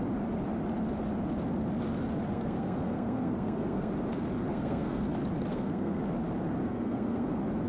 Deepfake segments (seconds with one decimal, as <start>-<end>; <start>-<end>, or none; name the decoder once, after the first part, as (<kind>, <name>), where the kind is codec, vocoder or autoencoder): 2.3-3.9 (codec, SNAC); 4.5-5.1; 5.5-6.0; 6.6-7.3